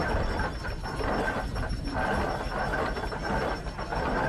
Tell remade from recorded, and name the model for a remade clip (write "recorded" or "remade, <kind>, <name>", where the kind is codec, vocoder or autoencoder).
recorded